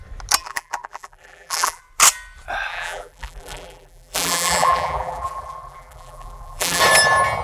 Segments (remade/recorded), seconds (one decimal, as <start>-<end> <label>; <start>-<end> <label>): 0.0-0.4 recorded; 0.4-1.8 remade; 1.8-2.7 recorded; 2.7-6.8 remade; 6.8-7.4 recorded